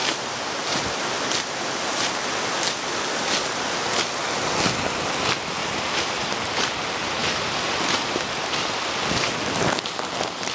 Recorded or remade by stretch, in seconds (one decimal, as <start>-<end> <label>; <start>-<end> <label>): 0.0-0.8 remade; 0.8-5.6 recorded; 5.6-6.3 remade; 6.3-10.5 recorded